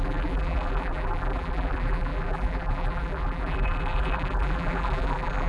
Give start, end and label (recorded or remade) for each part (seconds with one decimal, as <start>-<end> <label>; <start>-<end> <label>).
0.0-5.5 remade